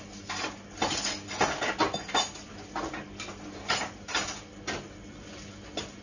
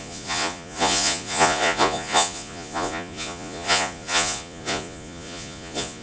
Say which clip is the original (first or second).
first